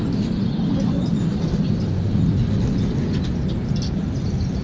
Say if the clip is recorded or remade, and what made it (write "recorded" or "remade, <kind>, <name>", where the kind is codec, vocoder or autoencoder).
recorded